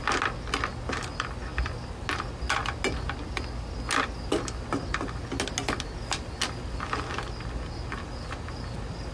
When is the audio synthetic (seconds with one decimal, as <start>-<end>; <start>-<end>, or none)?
none